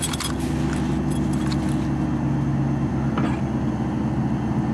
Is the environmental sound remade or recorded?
recorded